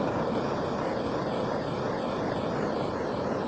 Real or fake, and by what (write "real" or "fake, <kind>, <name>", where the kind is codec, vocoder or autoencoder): real